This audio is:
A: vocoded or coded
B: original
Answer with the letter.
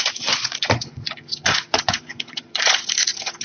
A